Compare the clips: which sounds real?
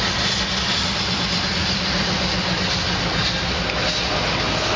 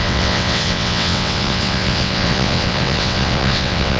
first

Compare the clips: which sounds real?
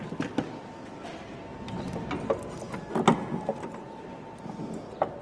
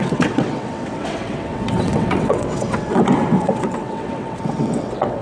first